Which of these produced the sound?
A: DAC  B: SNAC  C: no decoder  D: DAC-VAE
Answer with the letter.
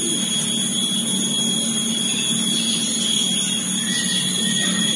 C